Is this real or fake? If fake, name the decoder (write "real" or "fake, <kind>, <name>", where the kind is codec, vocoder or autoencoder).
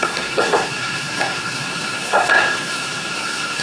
fake, codec, SNAC